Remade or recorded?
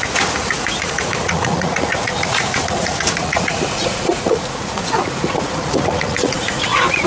remade